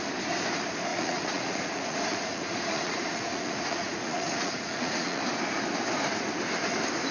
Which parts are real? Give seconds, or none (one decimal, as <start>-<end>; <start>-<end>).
0.0-0.9; 5.2-7.1